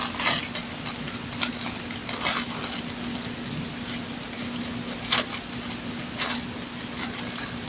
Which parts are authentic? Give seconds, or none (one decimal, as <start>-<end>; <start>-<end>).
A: 0.0-7.7